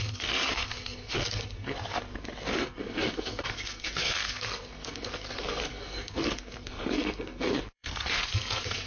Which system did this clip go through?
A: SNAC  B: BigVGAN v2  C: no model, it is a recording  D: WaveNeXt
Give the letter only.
A